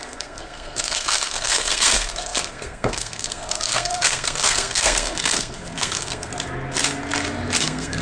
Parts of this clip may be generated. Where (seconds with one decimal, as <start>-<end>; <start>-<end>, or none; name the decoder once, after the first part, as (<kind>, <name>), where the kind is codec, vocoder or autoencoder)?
0.0-6.3 (codec, SNAC); 7.6-8.0